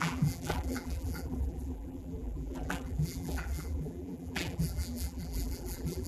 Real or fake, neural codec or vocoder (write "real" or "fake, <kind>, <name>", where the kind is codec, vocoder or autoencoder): fake, vocoder, BigVGAN v2